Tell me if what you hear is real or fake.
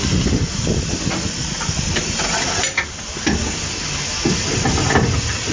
real